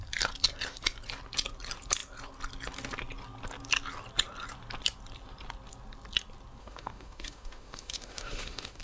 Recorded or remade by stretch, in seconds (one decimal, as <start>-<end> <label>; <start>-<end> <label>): 0.0-6.6 recorded; 6.6-8.8 remade